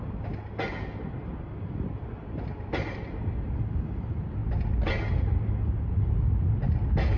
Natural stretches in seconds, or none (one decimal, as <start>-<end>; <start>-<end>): 0.0-7.2